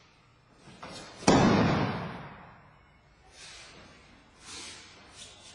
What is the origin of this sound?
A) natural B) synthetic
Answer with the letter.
A